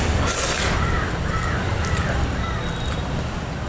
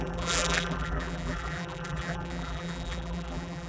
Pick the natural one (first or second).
first